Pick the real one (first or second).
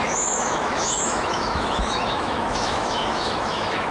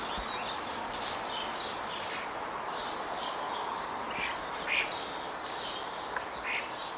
second